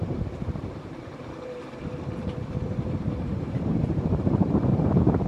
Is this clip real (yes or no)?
no